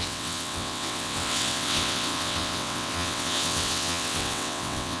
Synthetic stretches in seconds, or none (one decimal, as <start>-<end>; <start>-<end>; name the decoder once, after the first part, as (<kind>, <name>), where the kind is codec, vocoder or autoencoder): 0.0-5.0 (vocoder, WaveNeXt)